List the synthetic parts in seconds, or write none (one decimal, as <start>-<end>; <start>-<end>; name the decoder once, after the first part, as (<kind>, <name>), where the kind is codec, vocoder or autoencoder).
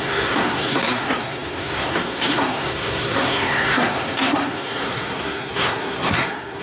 0.0-6.6 (codec, SNAC)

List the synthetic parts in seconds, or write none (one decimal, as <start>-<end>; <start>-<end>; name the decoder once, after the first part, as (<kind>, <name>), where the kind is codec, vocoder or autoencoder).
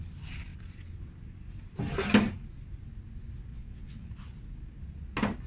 3.5-4.1 (vocoder, Vocos)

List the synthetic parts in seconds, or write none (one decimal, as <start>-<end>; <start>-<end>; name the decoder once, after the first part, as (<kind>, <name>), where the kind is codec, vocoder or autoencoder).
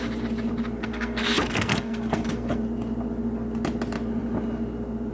0.8-2.6 (codec, SNAC)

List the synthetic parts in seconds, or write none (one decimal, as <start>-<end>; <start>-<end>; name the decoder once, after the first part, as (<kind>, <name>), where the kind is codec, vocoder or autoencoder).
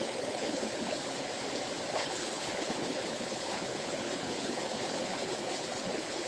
0.0-1.3 (codec, HILCodec); 2.0-6.3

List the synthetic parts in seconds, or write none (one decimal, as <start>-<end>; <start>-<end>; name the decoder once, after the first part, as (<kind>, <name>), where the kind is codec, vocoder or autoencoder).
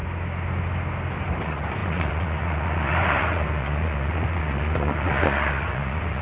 1.4-6.2 (vocoder, Vocos)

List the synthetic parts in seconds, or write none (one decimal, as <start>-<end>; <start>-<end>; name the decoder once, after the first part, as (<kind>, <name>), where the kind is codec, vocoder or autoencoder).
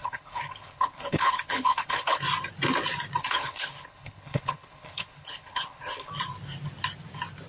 0.0-2.2 (codec, HILCodec); 3.2-6.1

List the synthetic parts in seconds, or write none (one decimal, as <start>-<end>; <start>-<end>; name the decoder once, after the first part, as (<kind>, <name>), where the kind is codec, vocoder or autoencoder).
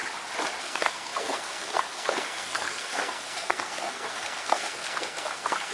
0.6-5.7 (codec, SNAC)